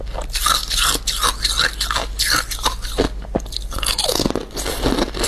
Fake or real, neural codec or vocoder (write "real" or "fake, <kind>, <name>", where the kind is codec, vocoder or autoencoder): real